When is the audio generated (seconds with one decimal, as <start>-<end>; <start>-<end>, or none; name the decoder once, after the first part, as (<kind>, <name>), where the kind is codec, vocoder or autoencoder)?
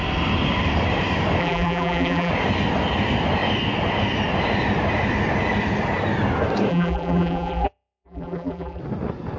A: 1.4-2.3 (vocoder, BigVGAN v2); 6.7-8.8